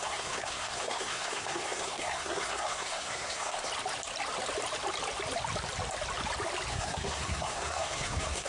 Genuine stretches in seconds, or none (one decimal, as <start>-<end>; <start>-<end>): 3.7-6.7